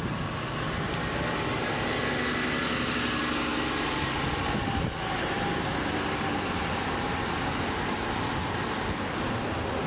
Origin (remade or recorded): recorded